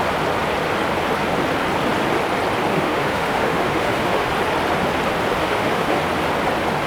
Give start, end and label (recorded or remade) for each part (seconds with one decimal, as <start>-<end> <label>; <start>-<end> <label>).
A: 0.0-2.7 recorded; 2.7-4.3 remade; 4.3-5.4 recorded; 5.4-6.0 remade; 6.0-6.9 recorded